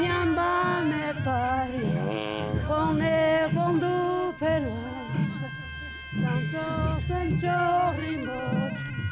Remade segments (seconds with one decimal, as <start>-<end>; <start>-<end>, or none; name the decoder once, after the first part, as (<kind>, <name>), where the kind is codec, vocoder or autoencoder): 1.7-3.7 (autoencoder, DAC-VAE)